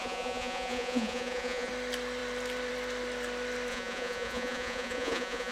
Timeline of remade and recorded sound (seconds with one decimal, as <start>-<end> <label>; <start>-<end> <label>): 0.0-1.7 remade; 1.7-3.7 recorded; 3.7-5.5 remade